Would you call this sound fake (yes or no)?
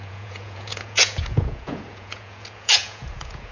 yes